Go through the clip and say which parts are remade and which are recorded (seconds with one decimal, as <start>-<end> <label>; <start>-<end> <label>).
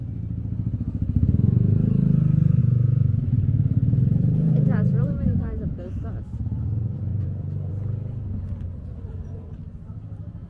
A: 0.0-2.6 recorded; 2.6-5.8 remade; 5.8-7.1 recorded; 7.1-7.7 remade; 7.7-10.5 recorded